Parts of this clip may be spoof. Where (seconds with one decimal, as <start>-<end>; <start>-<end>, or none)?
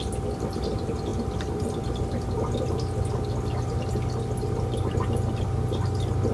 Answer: none